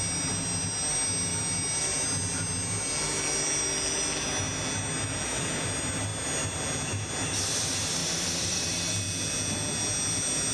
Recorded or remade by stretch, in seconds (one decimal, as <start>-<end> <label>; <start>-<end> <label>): 0.0-8.0 recorded; 8.0-8.9 remade; 8.9-10.5 recorded